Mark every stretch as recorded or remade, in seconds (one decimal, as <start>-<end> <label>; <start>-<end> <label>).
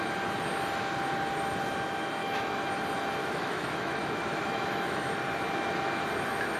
0.0-2.2 recorded; 2.2-2.7 remade; 2.7-3.2 recorded; 3.2-5.1 remade; 5.1-6.6 recorded